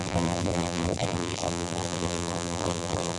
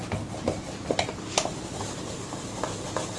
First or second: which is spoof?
first